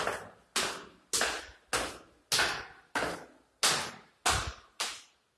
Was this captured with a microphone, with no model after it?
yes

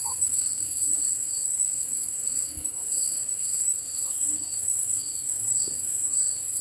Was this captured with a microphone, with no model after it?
no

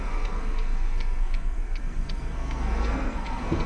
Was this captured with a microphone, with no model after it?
no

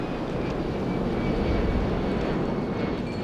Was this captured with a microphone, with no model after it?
yes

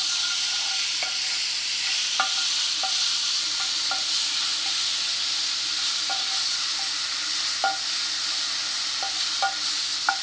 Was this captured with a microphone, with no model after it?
yes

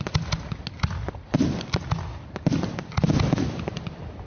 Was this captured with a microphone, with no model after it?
yes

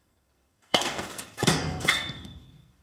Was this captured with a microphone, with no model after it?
no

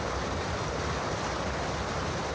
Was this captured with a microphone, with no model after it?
yes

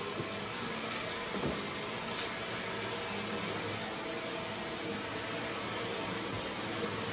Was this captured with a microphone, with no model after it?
yes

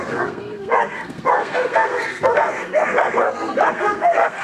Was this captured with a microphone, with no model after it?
no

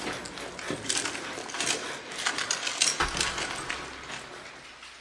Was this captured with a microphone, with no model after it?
yes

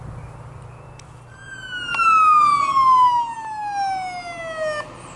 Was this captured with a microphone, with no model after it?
yes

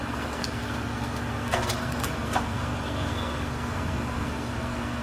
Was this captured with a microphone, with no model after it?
no